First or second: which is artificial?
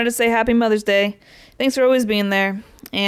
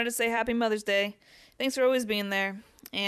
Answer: second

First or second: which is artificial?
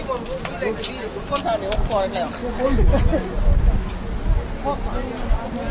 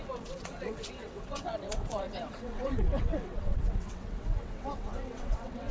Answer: second